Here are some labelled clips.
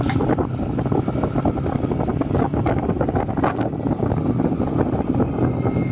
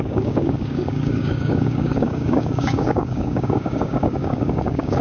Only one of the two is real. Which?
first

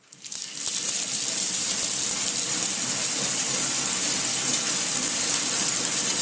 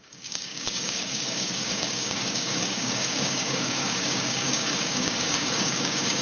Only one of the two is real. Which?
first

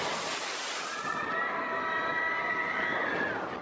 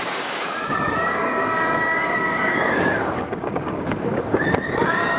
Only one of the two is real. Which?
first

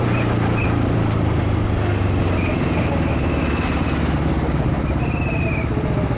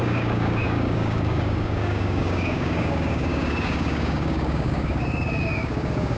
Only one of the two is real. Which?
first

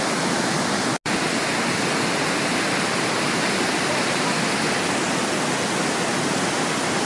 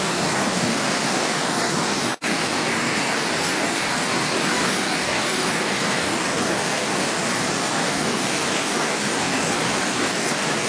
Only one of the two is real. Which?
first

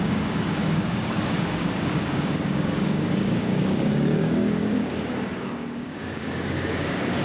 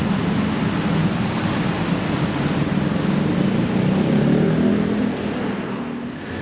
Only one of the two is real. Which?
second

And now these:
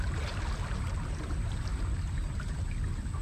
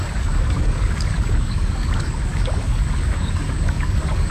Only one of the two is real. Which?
first